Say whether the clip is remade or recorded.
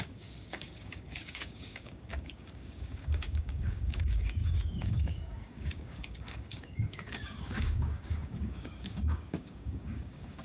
remade